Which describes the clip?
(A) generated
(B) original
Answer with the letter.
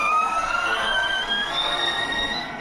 A